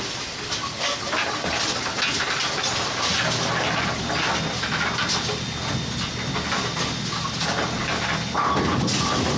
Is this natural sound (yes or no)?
yes